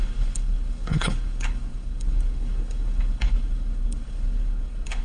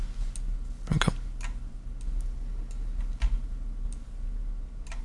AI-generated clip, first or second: first